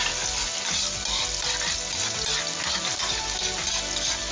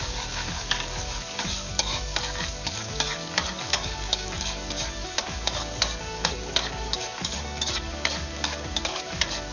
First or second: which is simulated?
second